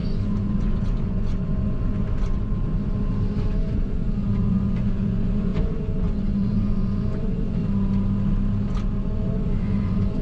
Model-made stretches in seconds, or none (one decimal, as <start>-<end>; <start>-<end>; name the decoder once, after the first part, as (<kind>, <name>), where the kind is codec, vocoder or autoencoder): 0.0-2.5 (vocoder, Vocos); 3.6-7.6; 9.0-10.2